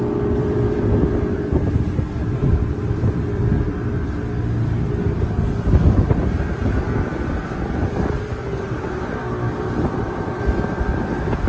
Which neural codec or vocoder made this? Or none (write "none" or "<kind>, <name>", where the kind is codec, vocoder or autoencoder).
vocoder, BigVGAN v2